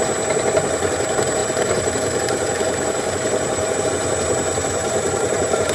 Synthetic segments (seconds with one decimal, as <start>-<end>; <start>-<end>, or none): 1.4-3.8; 4.8-5.7